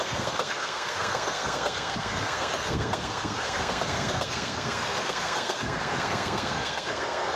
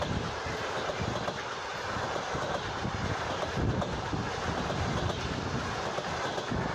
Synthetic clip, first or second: first